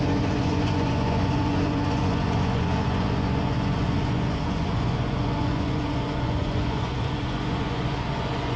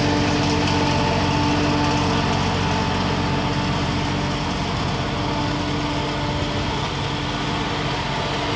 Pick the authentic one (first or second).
second